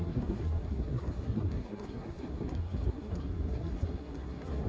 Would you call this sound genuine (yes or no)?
no